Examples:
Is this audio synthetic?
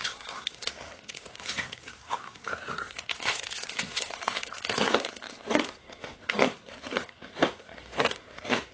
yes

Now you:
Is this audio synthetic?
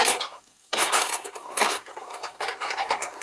yes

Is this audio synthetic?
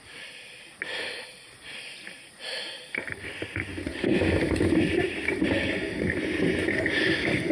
no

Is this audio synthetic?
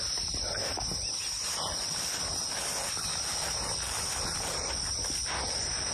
no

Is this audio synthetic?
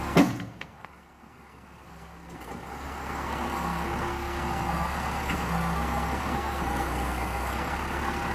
yes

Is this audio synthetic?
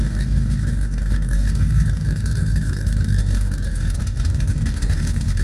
yes